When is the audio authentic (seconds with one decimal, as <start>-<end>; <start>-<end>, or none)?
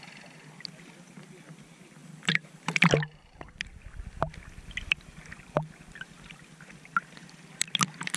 0.0-2.0; 2.9-8.2